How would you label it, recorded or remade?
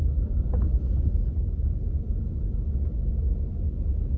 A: recorded